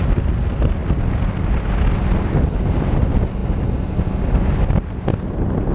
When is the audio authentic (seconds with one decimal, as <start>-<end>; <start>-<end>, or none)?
0.0-5.7